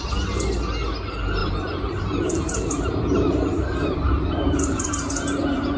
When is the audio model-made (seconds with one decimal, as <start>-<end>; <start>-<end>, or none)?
1.4-4.9